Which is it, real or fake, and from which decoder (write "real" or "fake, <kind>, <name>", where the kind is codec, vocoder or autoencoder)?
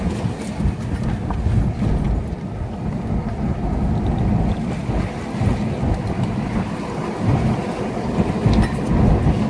real